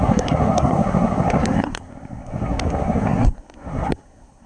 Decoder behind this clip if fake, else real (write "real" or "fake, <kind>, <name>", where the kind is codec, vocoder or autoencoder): fake, codec, SNAC